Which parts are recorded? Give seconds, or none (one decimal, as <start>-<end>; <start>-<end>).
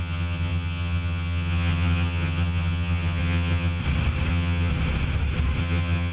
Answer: 3.8-4.3; 4.7-5.6